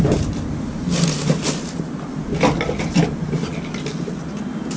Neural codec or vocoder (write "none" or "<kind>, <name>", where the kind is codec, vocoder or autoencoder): none